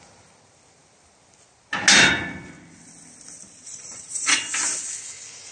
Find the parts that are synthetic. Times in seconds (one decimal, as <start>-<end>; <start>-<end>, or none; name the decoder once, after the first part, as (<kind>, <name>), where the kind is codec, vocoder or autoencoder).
3.7-4.4 (vocoder, Vocos)